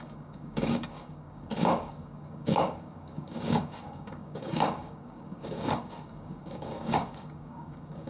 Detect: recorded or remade remade